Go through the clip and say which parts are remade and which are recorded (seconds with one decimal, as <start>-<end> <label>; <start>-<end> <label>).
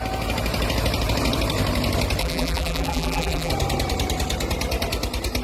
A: 0.0-2.2 recorded; 2.2-3.5 remade; 3.5-5.4 recorded